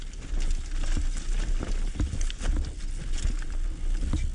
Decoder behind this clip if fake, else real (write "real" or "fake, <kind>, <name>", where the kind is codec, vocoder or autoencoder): real